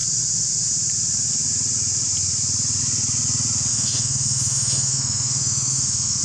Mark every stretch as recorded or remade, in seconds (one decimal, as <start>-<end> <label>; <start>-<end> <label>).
0.0-3.7 recorded; 3.7-6.2 remade